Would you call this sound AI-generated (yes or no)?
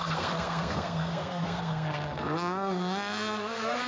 yes